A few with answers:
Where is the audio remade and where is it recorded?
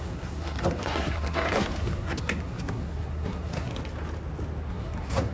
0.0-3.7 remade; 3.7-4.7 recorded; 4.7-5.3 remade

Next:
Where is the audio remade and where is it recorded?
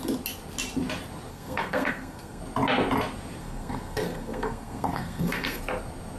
0.0-1.3 recorded; 1.3-2.4 remade; 2.4-3.4 recorded; 3.4-5.6 remade; 5.6-6.2 recorded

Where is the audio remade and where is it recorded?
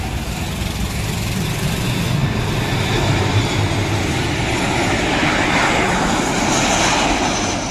0.0-7.7 recorded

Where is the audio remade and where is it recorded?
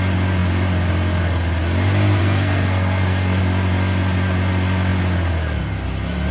0.0-2.2 recorded; 2.2-3.4 remade; 3.4-6.3 recorded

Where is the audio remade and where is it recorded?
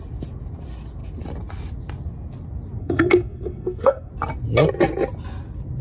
0.0-2.8 recorded; 2.8-4.1 remade; 4.1-5.8 recorded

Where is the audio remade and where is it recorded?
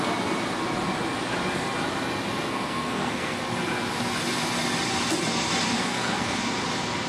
0.0-2.5 recorded; 2.5-3.4 remade; 3.4-5.8 recorded; 5.8-6.4 remade; 6.4-7.1 recorded